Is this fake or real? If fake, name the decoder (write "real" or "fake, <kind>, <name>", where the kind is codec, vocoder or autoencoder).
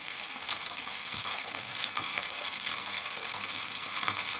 fake, codec, SNAC